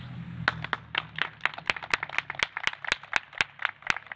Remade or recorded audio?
recorded